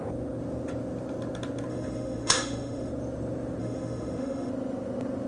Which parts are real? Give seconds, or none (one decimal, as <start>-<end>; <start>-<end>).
0.0-1.7; 2.9-3.6; 4.5-5.3